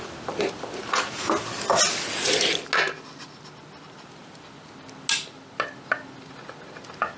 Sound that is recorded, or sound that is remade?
recorded